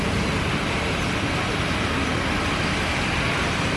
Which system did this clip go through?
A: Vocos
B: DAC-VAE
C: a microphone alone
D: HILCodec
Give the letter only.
C